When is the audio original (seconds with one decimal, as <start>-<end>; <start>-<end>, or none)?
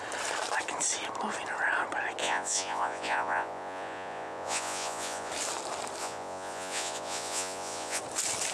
0.0-2.2; 5.3-6.0; 8.0-8.5